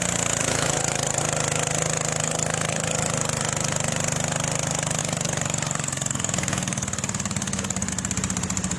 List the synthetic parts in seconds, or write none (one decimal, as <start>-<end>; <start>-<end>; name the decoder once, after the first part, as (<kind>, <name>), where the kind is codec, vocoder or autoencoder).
0.4-1.2 (codec, DAC); 2.2-3.1; 5.0-7.9